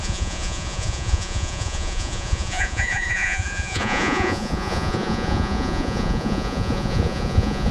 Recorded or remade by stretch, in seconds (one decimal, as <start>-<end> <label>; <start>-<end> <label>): 0.0-7.7 remade